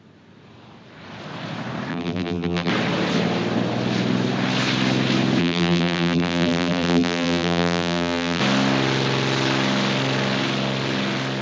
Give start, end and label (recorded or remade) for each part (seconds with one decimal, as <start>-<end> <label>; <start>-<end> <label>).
0.0-1.9 recorded; 1.9-2.7 remade; 2.7-5.4 recorded; 5.4-8.4 remade; 8.4-11.4 recorded